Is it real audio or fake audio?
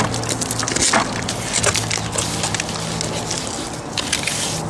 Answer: real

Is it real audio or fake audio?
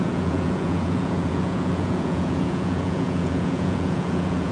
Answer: fake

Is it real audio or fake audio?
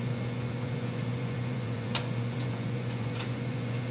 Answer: fake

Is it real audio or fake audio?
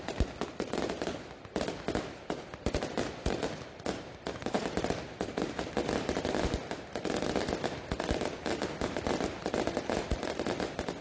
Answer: real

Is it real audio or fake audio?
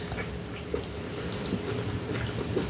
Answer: real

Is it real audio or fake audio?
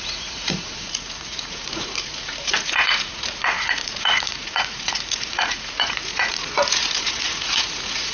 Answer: fake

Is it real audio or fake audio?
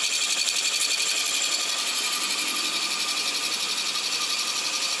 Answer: real